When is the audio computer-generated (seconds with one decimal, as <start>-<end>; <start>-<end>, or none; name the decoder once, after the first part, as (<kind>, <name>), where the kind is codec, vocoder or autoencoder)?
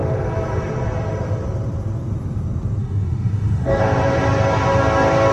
2.8-3.8 (autoencoder, DAC-VAE)